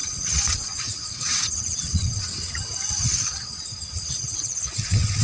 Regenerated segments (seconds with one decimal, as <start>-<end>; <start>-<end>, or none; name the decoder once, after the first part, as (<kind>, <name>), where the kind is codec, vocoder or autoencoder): 0.0-5.2 (vocoder, WaveNeXt)